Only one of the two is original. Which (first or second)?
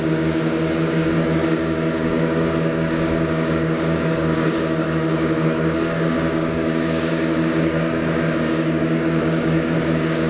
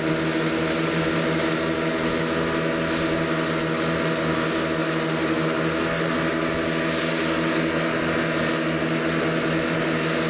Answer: second